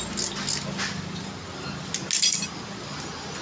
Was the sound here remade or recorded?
recorded